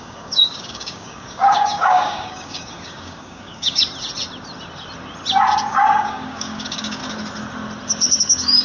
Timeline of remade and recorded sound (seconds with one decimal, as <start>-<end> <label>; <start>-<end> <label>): 0.0-3.8 remade; 3.8-5.7 recorded; 5.7-7.0 remade; 7.0-8.2 recorded; 8.2-8.6 remade